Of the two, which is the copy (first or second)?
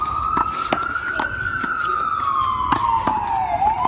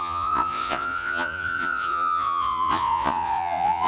second